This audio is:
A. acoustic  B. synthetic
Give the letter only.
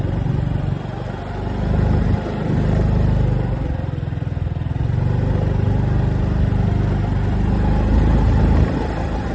A